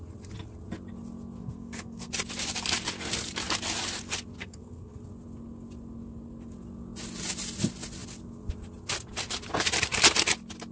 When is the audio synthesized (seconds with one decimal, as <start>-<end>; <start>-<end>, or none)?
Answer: 1.4-2.1; 4.4-5.0